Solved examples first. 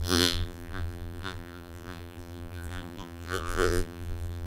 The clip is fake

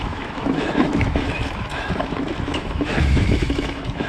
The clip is fake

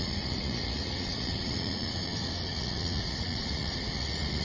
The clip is fake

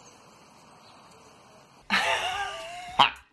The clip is real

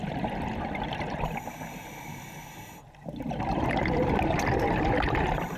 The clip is real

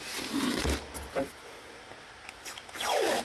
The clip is real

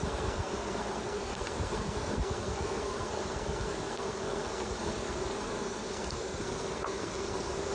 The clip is fake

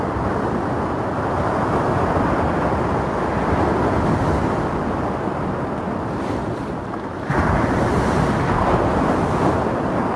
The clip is real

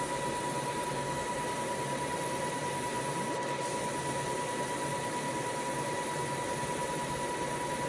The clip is real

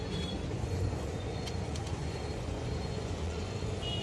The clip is fake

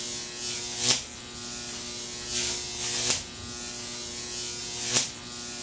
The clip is real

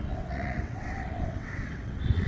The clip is fake